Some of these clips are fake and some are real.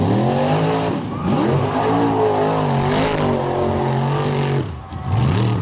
real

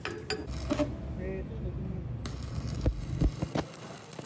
real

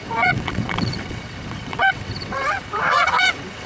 fake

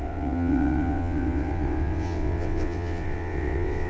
fake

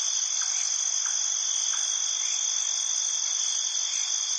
real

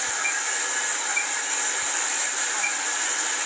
real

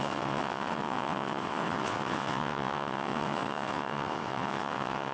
fake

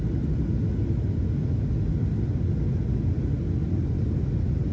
real